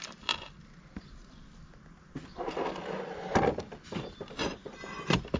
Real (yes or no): yes